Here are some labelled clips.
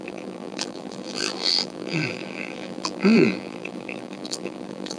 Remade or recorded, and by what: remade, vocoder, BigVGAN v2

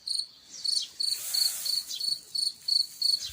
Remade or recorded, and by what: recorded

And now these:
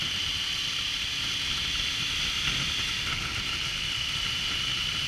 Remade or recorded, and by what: remade, vocoder, BigVGAN v2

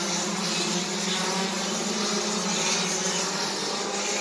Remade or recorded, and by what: recorded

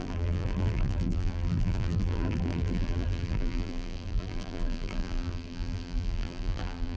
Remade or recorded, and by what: remade, vocoder, BigVGAN v2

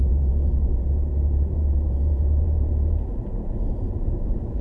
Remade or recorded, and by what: remade, vocoder, BigVGAN v2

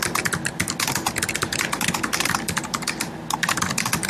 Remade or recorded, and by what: recorded